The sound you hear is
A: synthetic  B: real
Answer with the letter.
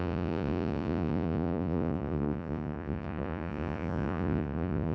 A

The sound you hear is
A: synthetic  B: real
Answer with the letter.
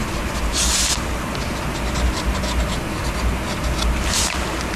B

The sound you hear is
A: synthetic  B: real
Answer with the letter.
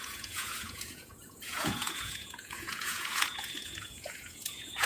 A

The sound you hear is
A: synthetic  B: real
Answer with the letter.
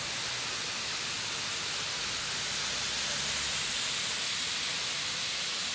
B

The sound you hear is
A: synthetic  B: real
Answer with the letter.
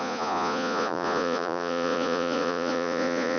A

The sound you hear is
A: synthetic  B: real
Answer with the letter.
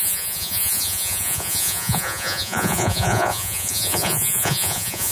A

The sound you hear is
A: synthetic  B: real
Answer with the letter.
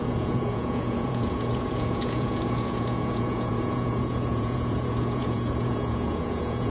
A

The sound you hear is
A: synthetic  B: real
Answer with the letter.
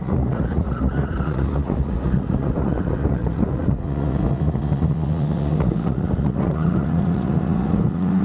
A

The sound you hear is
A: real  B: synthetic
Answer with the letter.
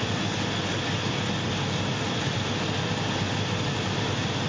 A